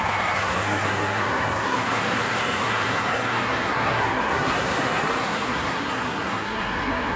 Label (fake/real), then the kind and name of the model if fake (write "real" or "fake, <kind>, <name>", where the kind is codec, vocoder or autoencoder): fake, codec, SNAC